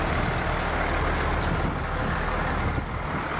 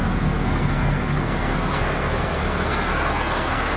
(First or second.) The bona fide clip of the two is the first